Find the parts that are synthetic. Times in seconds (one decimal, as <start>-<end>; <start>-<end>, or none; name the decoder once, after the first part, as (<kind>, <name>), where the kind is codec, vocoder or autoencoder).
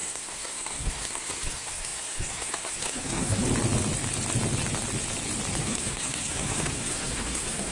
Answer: 0.0-3.4 (codec, SNAC); 5.6-7.7